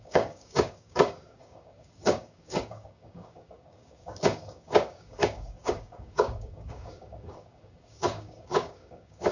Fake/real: fake